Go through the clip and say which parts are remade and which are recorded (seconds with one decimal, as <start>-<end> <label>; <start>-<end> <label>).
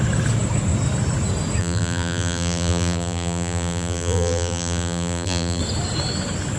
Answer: 0.0-1.6 recorded; 1.6-5.6 remade; 5.6-6.6 recorded